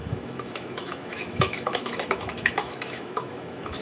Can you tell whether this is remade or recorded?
remade